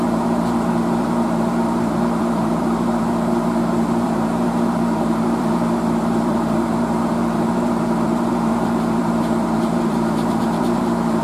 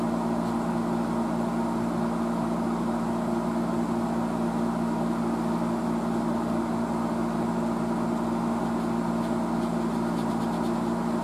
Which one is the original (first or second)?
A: second